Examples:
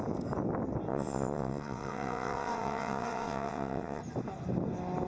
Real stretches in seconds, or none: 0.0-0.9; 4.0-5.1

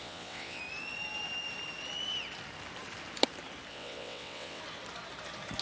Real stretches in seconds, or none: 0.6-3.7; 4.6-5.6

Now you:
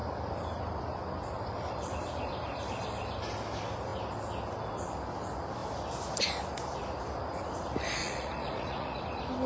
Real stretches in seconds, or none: 0.0-8.0; 9.0-9.5

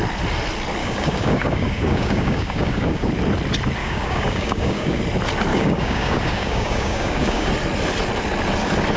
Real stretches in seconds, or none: 0.0-0.8; 3.1-3.8; 5.0-5.5; 7.5-9.0